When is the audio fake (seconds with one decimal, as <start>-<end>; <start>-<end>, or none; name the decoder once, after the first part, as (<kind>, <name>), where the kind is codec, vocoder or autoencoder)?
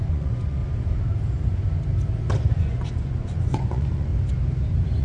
0.0-0.6 (vocoder, Vocos); 2.5-4.1